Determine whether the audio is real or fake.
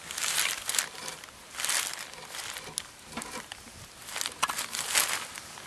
real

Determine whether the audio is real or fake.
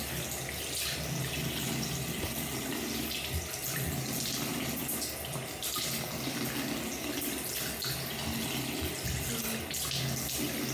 real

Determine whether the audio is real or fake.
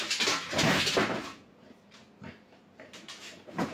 real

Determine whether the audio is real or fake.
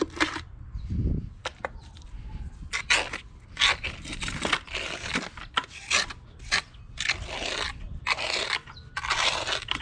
real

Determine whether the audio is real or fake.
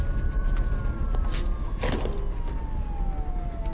real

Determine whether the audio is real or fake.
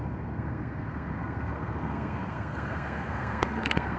fake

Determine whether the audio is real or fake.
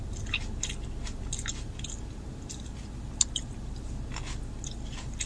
real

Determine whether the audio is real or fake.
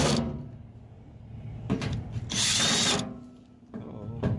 real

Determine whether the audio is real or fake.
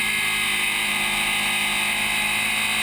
real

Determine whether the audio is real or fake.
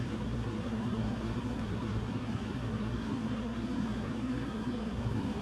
fake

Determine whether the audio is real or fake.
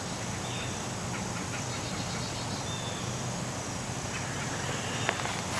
real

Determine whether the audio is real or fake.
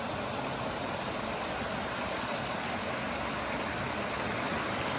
real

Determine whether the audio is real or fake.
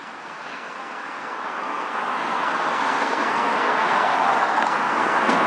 fake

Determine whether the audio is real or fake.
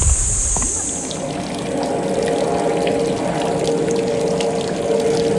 real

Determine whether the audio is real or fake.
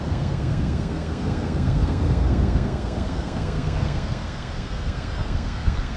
fake